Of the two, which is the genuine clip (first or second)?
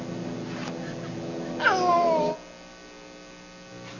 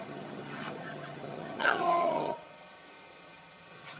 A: first